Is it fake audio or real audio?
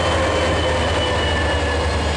real